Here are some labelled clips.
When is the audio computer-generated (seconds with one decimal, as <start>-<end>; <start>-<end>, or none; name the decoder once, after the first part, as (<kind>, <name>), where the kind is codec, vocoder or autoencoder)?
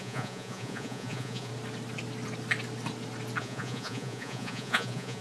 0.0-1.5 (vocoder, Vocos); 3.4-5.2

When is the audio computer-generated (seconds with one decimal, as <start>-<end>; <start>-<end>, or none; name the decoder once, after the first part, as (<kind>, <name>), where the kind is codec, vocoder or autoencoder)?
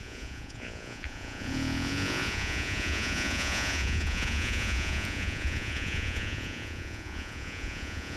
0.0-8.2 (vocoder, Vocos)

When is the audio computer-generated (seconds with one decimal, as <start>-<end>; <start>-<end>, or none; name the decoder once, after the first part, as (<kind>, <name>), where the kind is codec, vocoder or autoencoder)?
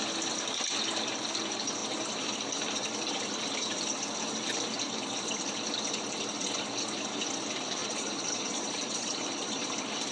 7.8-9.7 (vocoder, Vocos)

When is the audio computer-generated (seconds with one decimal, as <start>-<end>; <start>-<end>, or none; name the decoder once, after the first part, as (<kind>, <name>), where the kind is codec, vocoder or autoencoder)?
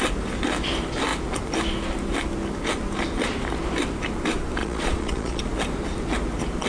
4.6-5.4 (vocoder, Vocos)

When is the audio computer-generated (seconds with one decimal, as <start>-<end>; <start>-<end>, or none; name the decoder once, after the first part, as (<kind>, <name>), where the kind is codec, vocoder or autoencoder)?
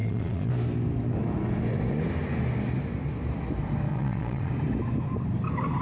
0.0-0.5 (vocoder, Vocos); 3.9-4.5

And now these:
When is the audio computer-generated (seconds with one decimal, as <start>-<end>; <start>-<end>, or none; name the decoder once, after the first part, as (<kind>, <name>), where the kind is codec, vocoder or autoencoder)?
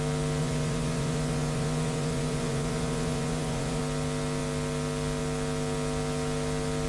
0.4-3.8 (vocoder, Vocos)